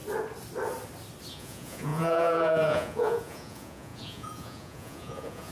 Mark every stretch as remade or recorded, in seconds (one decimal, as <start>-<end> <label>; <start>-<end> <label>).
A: 0.0-1.3 recorded; 1.3-5.5 remade